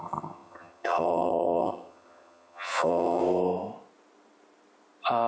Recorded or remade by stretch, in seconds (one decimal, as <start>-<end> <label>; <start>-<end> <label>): 0.0-3.2 remade; 3.2-5.3 recorded